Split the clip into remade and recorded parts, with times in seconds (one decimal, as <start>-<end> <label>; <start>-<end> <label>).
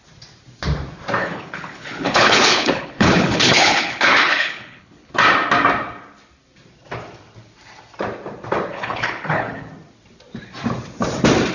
0.0-1.2 recorded; 1.2-5.1 remade; 5.1-8.7 recorded; 8.7-9.7 remade; 9.7-11.5 recorded